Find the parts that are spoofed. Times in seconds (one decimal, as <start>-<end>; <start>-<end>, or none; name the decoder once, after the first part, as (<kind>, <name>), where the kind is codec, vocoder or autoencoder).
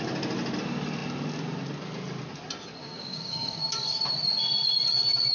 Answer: 2.8-3.6 (codec, DAC)